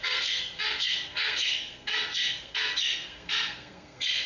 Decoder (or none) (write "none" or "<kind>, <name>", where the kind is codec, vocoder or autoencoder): codec, SNAC